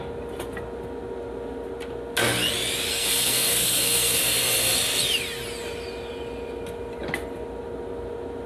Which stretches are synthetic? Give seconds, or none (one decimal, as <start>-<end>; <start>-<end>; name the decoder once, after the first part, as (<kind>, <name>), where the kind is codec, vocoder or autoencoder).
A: 2.9-4.2 (codec, SNAC)